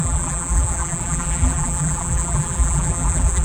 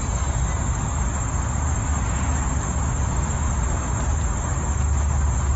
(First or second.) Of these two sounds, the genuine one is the second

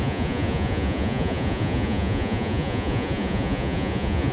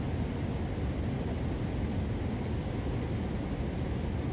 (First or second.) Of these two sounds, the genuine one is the second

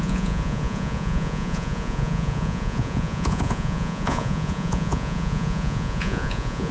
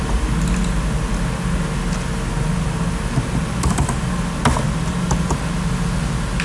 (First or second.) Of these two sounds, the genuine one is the second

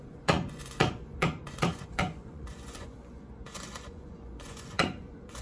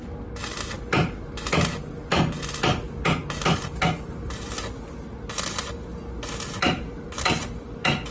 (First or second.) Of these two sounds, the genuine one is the second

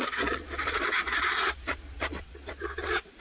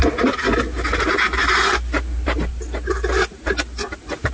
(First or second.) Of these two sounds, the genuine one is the second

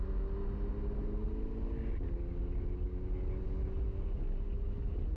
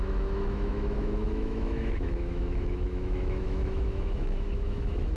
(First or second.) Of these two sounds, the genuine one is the first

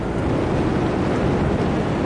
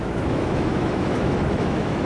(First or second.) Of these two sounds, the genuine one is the first